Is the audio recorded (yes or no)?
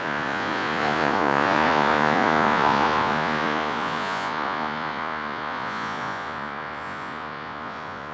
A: no